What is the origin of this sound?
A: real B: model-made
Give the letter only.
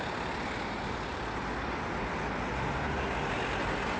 A